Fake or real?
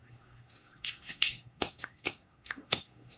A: fake